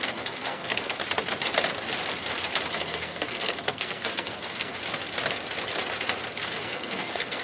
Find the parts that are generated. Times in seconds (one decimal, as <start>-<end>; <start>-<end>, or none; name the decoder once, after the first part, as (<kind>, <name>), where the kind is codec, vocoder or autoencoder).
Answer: 0.0-1.0 (codec, SNAC); 2.7-4.7; 6.4-7.4